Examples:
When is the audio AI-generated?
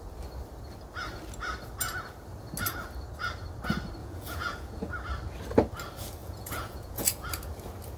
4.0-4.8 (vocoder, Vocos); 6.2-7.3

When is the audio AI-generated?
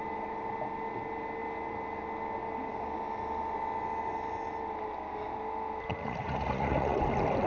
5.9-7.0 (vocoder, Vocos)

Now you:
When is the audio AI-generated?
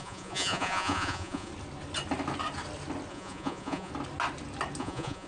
0.0-1.5 (vocoder, Vocos); 3.1-3.9; 4.8-5.3